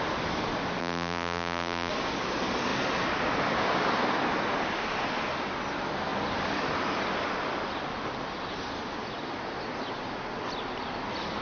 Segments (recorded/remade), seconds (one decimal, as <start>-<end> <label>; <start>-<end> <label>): 0.0-0.8 recorded; 0.8-1.9 remade; 1.9-11.4 recorded